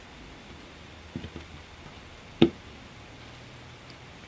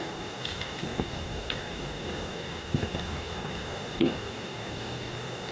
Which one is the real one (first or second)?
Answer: first